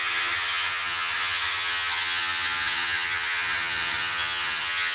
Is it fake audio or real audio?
fake